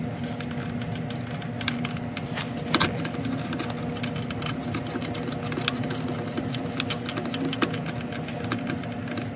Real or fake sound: real